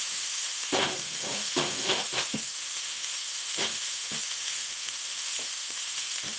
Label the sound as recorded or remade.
remade